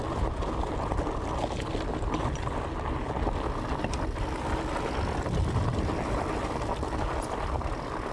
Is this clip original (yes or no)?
yes